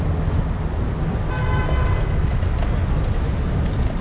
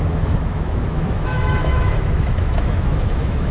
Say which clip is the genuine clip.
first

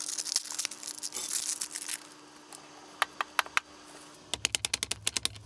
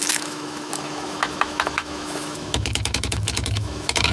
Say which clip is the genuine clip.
first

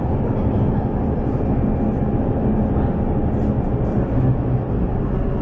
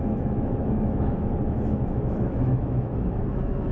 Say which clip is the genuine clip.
first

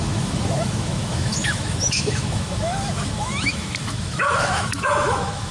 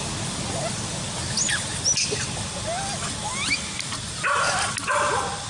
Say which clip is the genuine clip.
second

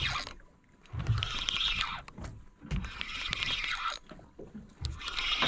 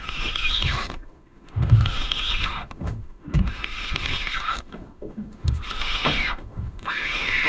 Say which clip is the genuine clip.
first